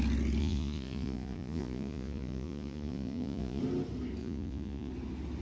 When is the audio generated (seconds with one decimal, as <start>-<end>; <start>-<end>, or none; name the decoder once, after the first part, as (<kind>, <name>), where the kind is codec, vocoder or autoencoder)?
0.4-3.6 (vocoder, Vocos); 4.2-4.9